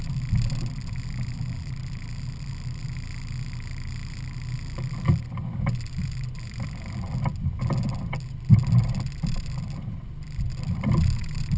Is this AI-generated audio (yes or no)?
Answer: yes